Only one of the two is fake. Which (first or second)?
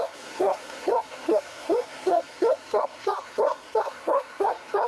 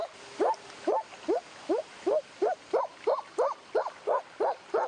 first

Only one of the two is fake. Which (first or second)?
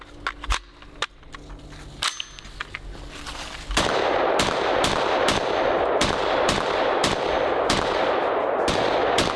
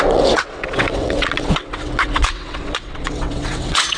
second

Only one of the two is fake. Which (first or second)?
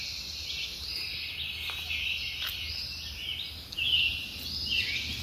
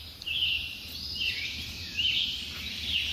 second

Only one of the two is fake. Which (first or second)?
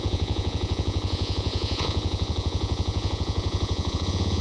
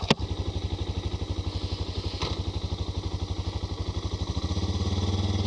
first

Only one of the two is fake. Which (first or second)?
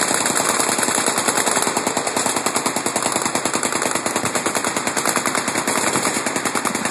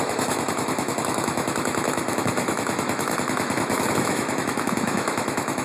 second